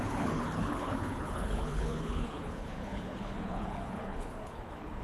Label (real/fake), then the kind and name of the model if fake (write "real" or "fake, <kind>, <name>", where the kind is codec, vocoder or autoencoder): fake, codec, HILCodec